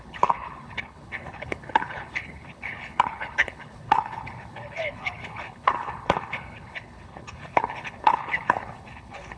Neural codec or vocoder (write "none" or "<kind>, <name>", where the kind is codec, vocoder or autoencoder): codec, HILCodec